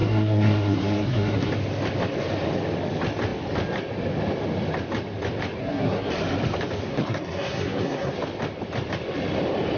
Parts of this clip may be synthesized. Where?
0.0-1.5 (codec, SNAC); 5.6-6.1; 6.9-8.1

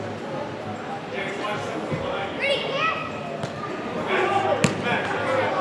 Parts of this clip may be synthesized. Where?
none

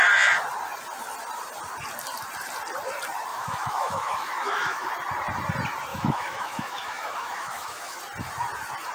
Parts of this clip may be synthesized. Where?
3.3-4.9 (autoencoder, DAC-VAE); 5.9-8.0

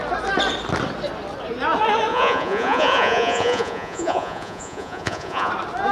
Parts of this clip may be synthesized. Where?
2.1-5.5 (vocoder, Vocos)